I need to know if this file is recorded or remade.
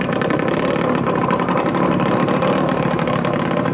recorded